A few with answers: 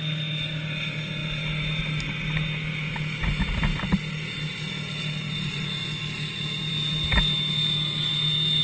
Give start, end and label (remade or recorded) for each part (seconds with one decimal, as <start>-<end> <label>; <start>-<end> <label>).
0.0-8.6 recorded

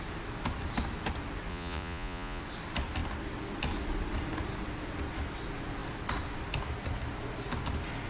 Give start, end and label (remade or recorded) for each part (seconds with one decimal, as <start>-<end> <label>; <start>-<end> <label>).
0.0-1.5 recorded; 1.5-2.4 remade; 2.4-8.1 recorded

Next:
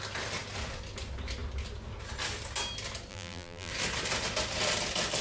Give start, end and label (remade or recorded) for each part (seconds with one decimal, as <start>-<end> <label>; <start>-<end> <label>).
0.0-3.1 recorded; 3.1-3.7 remade; 3.7-5.2 recorded

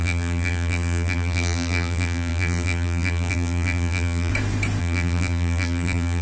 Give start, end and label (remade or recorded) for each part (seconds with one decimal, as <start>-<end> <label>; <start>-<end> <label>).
0.0-4.3 remade; 4.3-4.8 recorded; 4.8-6.2 remade